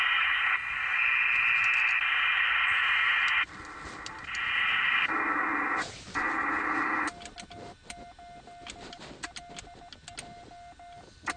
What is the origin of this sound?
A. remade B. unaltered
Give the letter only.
B